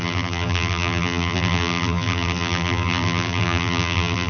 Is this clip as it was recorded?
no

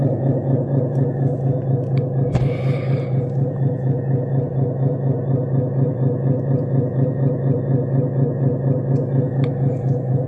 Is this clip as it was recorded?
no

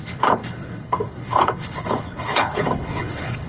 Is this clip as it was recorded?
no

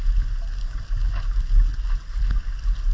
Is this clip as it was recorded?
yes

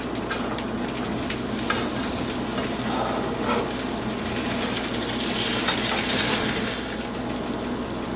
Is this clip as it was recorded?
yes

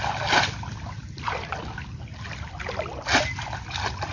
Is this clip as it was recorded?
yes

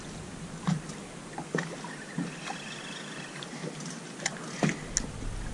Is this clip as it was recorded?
yes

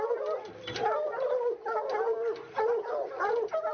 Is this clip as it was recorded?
yes